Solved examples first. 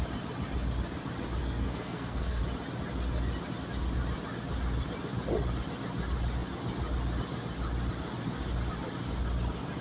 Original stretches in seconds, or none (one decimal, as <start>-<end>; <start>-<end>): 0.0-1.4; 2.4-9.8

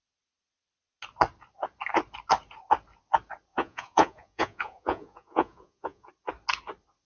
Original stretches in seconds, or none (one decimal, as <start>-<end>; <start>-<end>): 0.0-3.5; 6.1-7.0

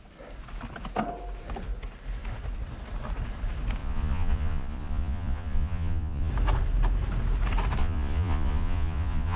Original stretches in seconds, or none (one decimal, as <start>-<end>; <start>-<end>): 0.0-3.8; 6.3-7.8

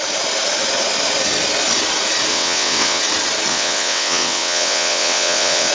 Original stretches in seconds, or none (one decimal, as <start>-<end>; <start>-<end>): 0.0-2.3; 3.0-3.5